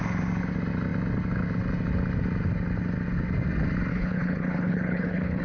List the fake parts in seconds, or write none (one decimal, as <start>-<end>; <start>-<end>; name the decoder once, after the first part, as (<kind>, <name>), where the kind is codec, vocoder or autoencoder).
3.9-5.4 (codec, HILCodec)